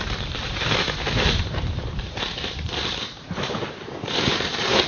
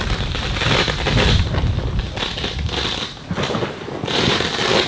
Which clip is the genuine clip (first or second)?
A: second